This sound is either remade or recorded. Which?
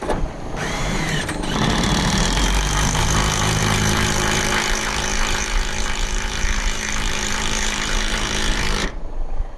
remade